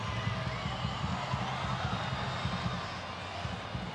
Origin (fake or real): real